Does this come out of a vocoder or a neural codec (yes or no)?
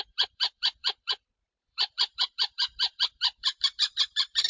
yes